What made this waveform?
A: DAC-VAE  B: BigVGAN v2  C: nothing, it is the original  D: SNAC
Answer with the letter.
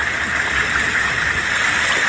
C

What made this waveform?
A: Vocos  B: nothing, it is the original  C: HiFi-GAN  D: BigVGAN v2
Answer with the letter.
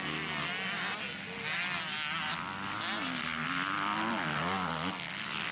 B